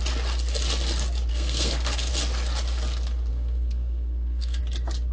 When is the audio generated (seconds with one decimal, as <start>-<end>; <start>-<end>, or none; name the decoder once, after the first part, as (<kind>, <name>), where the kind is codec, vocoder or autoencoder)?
1.3-2.1 (codec, SNAC); 3.3-4.6